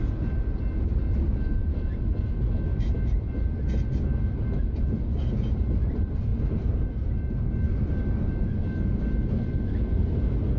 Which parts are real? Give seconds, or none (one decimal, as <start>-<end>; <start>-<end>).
0.0-10.6

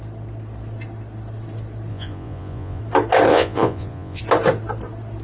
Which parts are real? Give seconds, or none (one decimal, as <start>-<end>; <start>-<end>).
0.0-1.9; 2.8-3.3; 4.2-5.2

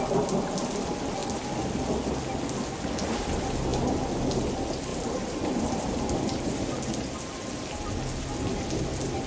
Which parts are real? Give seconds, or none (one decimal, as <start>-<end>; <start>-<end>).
0.0-4.9; 5.6-9.3

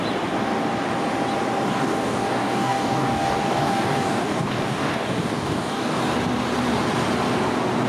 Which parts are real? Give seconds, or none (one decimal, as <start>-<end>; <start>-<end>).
0.0-1.7; 6.0-7.9

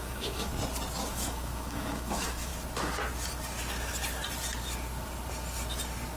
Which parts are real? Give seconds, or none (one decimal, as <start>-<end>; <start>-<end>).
0.5-1.1; 2.5-6.2

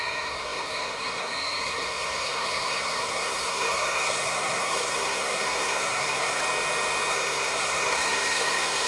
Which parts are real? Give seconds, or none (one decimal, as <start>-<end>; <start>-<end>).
6.4-7.1